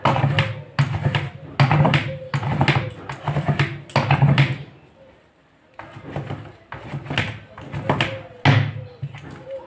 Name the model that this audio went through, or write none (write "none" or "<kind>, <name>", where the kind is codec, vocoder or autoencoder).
none